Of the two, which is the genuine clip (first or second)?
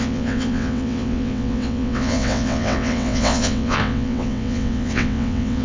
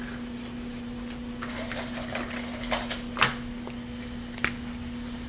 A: second